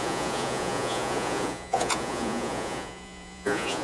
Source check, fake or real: fake